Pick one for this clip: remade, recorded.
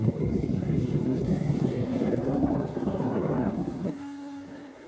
remade